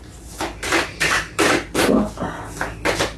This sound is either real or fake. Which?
real